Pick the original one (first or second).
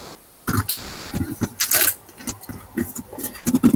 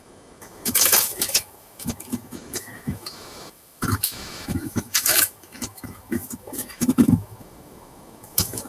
first